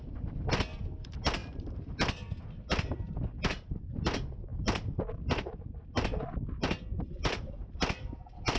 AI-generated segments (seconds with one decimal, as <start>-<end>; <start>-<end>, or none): none